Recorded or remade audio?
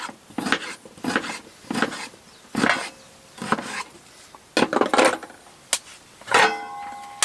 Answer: recorded